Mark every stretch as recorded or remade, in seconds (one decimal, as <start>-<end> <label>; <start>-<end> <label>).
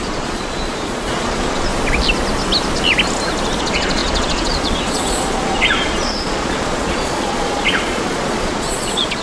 0.0-1.7 remade; 1.7-3.6 recorded; 3.6-9.2 remade